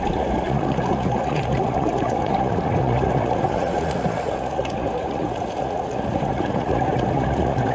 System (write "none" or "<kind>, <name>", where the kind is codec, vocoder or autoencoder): vocoder, Vocos